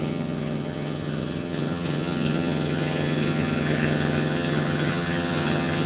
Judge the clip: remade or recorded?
remade